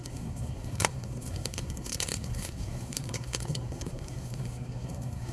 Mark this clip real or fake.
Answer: fake